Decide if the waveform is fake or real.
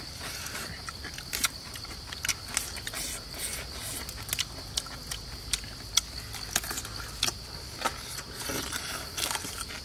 real